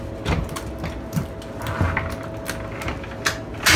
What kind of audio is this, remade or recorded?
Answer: recorded